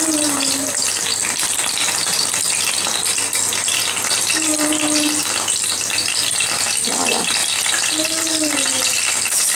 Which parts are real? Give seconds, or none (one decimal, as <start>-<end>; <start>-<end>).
0.0-1.2; 2.4-4.5; 5.2-7.4